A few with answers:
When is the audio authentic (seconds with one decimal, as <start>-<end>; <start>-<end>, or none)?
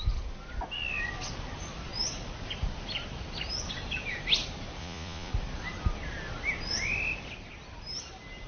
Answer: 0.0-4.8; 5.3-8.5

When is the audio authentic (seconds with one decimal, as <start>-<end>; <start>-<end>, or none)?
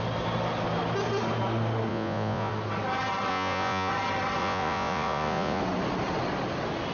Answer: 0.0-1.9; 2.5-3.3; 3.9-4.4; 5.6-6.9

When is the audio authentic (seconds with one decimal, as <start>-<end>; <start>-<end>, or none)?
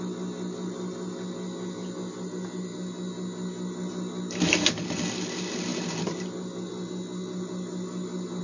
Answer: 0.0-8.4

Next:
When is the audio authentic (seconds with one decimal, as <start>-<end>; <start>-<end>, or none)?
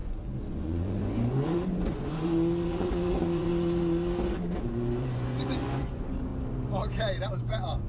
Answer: 3.5-4.6; 6.3-7.3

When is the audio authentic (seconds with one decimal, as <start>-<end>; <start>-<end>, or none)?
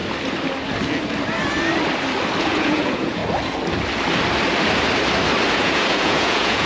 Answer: 0.0-2.4; 3.2-5.5